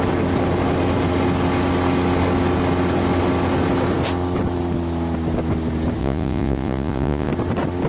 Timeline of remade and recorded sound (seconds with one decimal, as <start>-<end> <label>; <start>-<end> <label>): 0.0-6.0 recorded; 6.0-7.3 remade; 7.3-7.9 recorded